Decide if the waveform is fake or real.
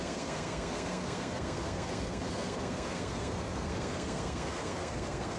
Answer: fake